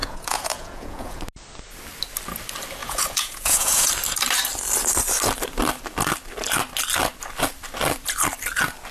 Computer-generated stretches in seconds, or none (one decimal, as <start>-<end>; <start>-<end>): 0.0-1.2; 2.8-3.9